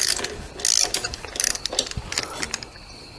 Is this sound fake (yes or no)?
no